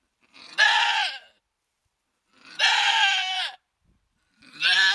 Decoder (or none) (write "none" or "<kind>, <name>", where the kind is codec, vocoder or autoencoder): vocoder, BigVGAN v2